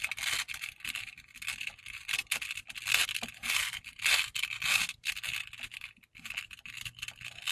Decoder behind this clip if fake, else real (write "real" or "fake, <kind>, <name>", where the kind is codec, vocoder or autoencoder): real